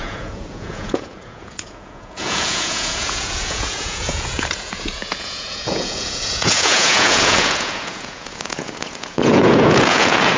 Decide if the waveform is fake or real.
fake